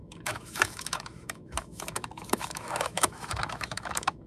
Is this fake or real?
fake